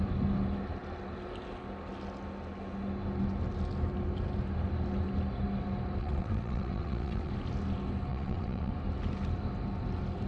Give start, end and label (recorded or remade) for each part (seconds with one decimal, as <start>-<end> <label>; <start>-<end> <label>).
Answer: 0.0-6.0 recorded; 6.0-7.3 remade; 7.3-8.1 recorded; 8.1-8.7 remade; 8.7-10.3 recorded